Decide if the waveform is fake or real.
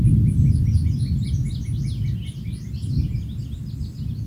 real